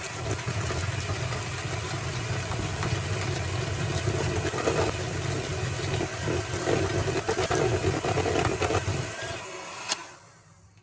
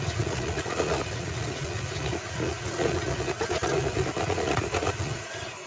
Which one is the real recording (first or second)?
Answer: first